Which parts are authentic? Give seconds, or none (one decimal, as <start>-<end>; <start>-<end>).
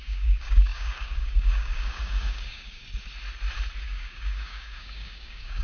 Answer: 2.8-3.8